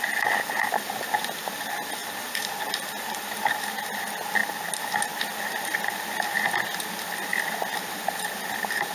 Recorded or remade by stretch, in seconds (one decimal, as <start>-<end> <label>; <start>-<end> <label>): 0.0-2.0 recorded; 2.0-3.7 remade; 3.7-4.4 recorded; 4.4-5.2 remade; 5.2-8.9 recorded